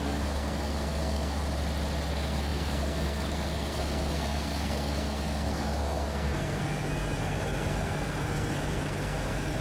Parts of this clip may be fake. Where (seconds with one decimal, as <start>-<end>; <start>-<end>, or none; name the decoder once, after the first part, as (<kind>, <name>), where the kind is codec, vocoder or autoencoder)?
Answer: 0.0-1.4 (codec, SNAC); 2.1-9.6

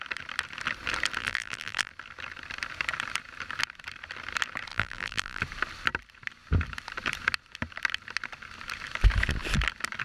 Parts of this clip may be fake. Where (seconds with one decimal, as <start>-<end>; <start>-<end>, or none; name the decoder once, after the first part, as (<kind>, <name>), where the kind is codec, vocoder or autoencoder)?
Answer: 1.2-1.9 (vocoder, BigVGAN v2); 4.7-5.4

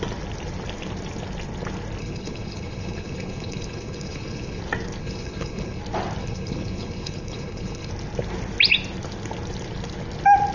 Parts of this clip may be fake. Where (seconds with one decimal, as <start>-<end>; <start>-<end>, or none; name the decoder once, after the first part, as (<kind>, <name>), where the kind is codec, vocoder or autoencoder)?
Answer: 2.0-4.6 (codec, HILCodec); 5.0-5.8; 6.2-7.9

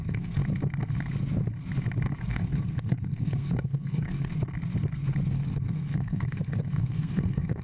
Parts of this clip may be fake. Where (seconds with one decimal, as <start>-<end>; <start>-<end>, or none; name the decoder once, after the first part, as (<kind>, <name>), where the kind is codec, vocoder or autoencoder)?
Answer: 0.0-0.4 (codec, SNAC); 2.3-4.3; 5.3-7.6